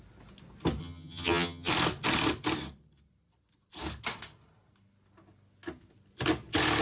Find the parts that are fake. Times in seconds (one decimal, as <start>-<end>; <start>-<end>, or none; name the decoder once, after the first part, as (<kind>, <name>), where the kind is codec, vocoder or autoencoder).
0.8-1.7 (vocoder, HiFi-GAN)